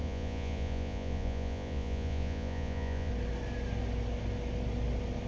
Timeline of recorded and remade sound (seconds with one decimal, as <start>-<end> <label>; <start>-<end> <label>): 0.0-3.1 remade; 3.1-5.3 recorded